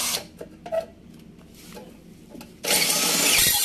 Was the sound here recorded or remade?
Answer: recorded